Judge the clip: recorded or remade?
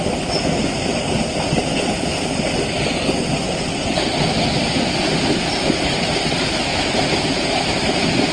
recorded